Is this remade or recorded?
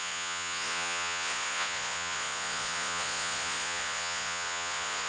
remade